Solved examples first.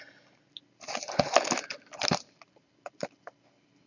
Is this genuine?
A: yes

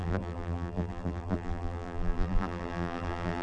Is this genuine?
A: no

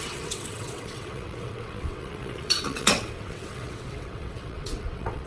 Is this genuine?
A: no